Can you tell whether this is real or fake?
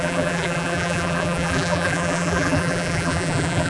fake